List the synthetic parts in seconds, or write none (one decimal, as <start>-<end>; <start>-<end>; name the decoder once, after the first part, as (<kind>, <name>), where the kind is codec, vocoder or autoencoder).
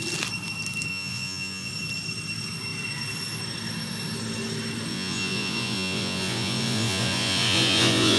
0.9-1.7 (vocoder, Vocos); 4.9-8.2